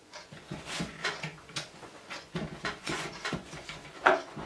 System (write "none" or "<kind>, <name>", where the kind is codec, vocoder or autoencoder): vocoder, Vocos